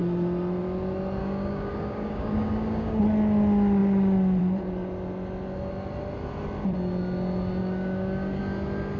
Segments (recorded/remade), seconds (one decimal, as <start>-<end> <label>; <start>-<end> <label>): 0.0-1.2 recorded; 1.2-3.0 remade; 3.0-7.6 recorded; 7.6-8.4 remade; 8.4-9.0 recorded